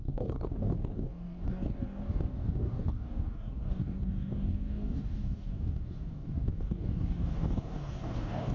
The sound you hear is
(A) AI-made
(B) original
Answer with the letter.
A